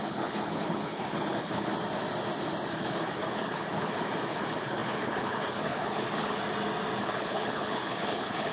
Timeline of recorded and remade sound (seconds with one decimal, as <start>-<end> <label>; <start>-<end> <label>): 0.0-1.7 remade; 1.7-2.7 recorded; 2.7-6.4 remade; 6.4-7.0 recorded; 7.0-8.5 remade